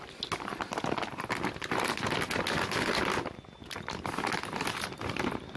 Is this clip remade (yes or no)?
no